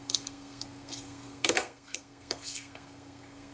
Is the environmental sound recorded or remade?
remade